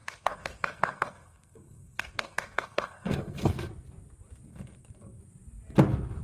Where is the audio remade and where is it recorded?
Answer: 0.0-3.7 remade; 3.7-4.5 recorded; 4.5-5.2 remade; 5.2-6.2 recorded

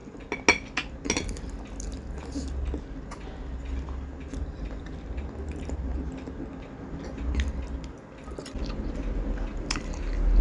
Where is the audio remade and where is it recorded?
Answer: 0.0-10.4 recorded

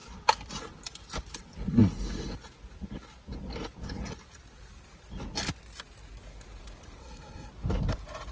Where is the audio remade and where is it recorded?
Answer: 0.0-7.0 recorded; 7.0-7.5 remade; 7.5-8.3 recorded

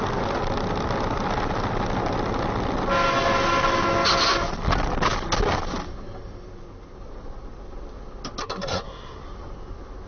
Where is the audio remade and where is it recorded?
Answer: 0.0-8.4 recorded; 8.4-9.2 remade; 9.2-10.1 recorded

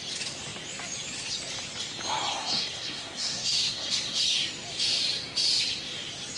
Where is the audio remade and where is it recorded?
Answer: 0.0-2.3 recorded; 2.3-4.2 remade; 4.2-6.4 recorded

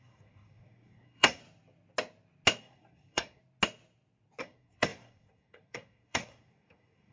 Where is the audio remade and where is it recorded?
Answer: 0.0-1.4 remade; 1.4-2.6 recorded; 2.6-3.4 remade; 3.4-4.4 recorded; 4.4-7.1 remade